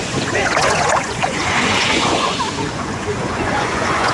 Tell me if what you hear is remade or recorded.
remade